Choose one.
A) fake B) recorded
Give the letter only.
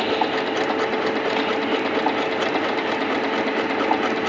B